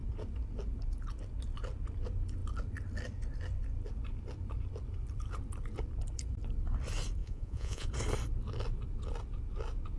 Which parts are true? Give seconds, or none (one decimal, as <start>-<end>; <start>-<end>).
0.0-7.2; 7.9-10.0